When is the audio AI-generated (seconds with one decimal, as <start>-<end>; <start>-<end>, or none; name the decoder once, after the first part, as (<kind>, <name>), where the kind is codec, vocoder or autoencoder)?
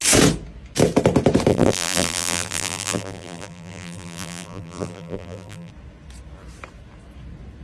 1.5-5.7 (vocoder, BigVGAN v2)